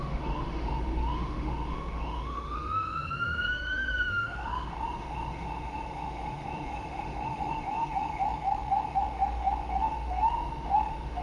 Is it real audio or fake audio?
fake